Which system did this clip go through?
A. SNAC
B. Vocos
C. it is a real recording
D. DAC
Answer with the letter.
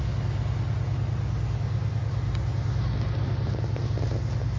C